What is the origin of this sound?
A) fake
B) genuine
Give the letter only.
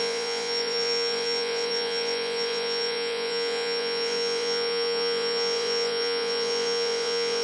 A